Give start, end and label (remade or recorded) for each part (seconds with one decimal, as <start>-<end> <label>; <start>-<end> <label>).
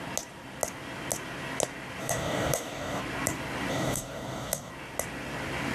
0.0-2.0 recorded; 2.0-3.0 remade; 3.0-3.7 recorded; 3.7-4.7 remade; 4.7-5.7 recorded